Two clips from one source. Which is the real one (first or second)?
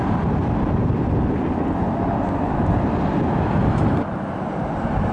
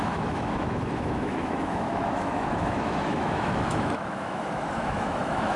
first